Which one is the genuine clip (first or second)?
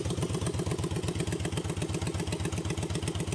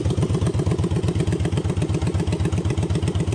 first